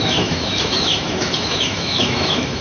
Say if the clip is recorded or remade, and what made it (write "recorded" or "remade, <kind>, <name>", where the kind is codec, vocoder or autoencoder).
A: remade, autoencoder, DAC-VAE